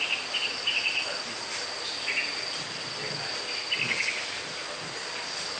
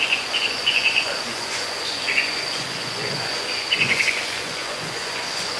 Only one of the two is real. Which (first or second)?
first